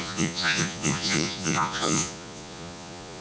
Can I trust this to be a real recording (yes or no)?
no